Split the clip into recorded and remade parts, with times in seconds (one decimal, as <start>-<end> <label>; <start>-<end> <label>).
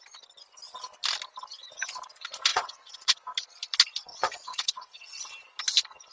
0.0-2.5 recorded; 2.5-3.2 remade; 3.2-4.1 recorded; 4.1-5.1 remade; 5.1-6.1 recorded